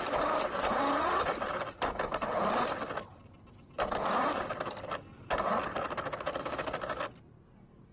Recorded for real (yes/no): yes